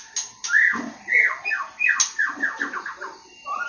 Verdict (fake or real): real